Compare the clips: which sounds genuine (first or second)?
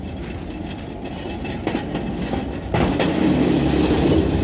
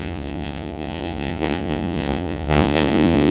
first